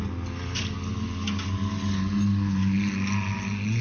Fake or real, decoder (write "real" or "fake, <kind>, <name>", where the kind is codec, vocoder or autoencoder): real